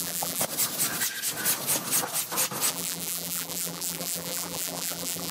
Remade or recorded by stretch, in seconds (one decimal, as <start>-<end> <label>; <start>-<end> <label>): 0.0-0.4 remade; 0.4-2.7 recorded; 2.7-5.3 remade